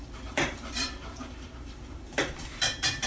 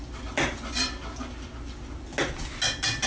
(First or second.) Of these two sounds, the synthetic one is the first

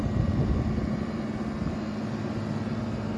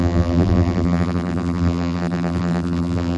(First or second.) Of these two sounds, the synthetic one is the second